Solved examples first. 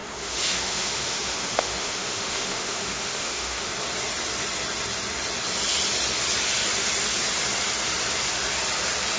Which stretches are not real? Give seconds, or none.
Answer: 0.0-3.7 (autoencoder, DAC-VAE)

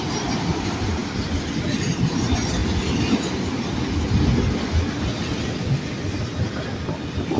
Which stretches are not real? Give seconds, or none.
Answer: none

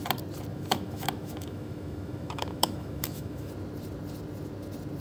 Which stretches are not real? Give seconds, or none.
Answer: 0.5-3.5 (autoencoder, DAC-VAE)